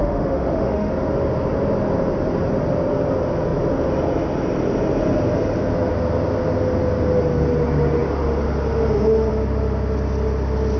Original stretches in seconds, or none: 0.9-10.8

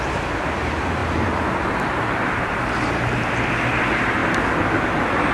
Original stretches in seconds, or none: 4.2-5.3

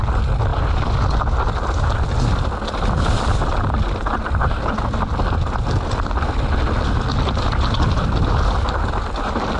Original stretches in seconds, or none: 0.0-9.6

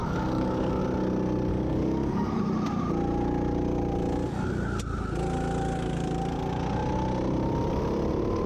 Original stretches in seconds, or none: 0.8-1.5; 2.4-8.5

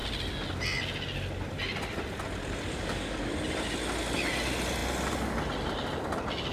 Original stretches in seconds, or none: 0.0-2.7; 3.3-6.5